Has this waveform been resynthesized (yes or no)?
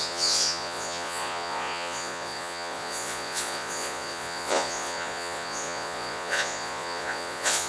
yes